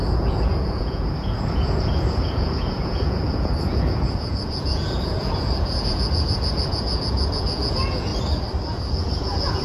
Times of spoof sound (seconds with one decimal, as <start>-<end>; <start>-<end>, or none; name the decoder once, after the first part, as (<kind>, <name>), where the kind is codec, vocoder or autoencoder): 0.0-8.1 (vocoder, Vocos); 8.7-9.6